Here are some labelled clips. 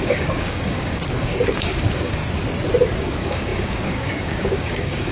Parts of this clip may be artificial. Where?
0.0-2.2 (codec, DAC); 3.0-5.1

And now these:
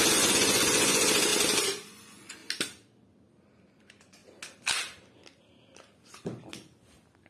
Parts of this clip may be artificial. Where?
0.0-1.3 (vocoder, Vocos); 1.9-2.4; 3.7-4.2

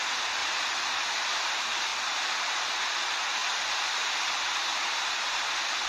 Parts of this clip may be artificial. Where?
0.4-1.5 (vocoder, BigVGAN v2); 4.7-5.5

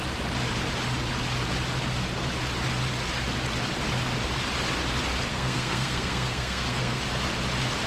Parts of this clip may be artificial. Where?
5.3-7.0 (codec, SNAC)

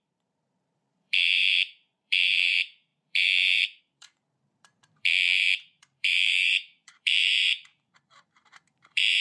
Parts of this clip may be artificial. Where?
0.0-9.2 (vocoder, BigVGAN v2)